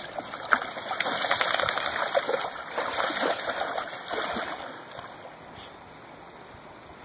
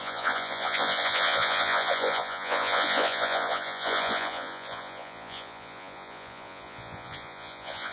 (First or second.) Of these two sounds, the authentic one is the first